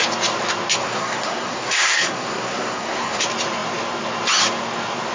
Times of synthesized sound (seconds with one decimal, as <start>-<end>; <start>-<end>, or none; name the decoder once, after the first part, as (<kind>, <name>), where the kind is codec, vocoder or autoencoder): 0.8-3.2 (codec, SNAC)